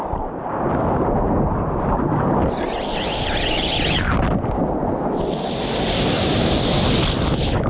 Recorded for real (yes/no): yes